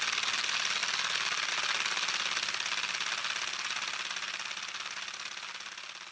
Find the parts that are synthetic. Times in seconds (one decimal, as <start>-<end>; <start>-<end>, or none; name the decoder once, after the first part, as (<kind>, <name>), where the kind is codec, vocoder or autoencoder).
none

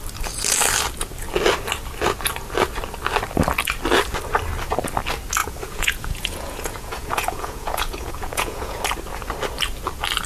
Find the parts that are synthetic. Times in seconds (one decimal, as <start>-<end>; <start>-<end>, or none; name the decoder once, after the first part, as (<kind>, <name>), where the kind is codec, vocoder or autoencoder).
5.4-8.8 (vocoder, Vocos)

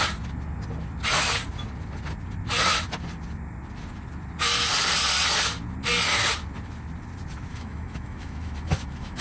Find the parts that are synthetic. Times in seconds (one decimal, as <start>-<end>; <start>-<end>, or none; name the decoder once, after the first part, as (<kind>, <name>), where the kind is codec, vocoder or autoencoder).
7.5-9.2 (autoencoder, DAC-VAE)